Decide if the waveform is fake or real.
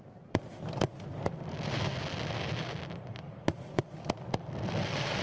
real